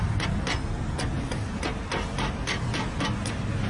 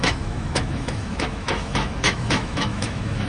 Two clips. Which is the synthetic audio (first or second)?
second